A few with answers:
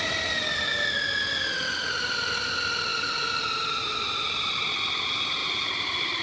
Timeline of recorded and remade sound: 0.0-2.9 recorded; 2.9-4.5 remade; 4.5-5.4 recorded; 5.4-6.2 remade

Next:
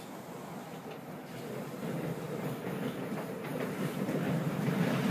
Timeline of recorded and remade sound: 0.0-3.5 recorded; 3.5-5.1 remade

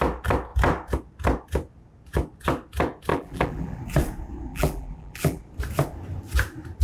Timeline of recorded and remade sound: 0.0-3.1 recorded; 3.1-3.8 remade; 3.8-4.5 recorded; 4.5-5.4 remade; 5.4-6.8 recorded

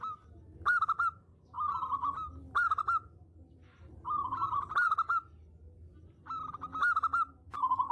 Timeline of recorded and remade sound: 0.0-7.9 recorded

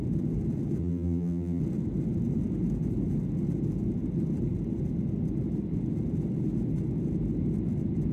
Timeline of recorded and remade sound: 0.0-0.8 recorded; 0.8-1.6 remade; 1.6-8.1 recorded

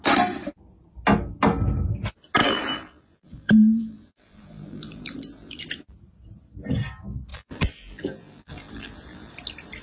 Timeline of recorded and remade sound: 0.0-2.4 recorded; 2.4-5.6 remade; 5.6-7.3 recorded; 7.3-9.3 remade; 9.3-9.8 recorded